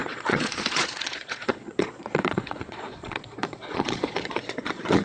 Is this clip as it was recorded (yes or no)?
no